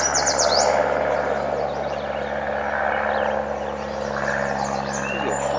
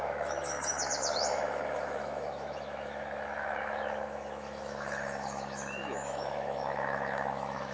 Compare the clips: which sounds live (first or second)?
first